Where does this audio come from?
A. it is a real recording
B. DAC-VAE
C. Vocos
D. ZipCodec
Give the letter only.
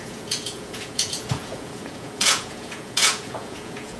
C